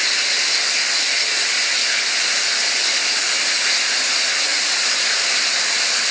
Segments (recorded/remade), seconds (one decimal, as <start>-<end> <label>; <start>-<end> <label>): 0.0-6.1 recorded